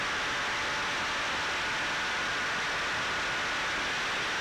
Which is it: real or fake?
real